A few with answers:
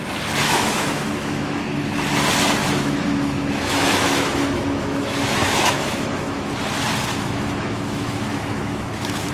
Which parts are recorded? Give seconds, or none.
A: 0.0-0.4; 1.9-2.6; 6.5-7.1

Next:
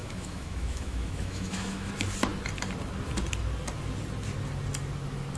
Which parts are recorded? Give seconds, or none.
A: 1.9-5.4

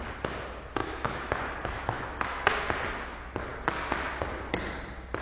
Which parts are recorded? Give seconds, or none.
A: 0.0-0.8; 2.5-5.2

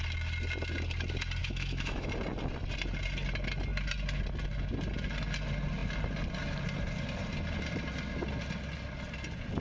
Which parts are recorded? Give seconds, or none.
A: 0.0-1.4; 2.1-9.6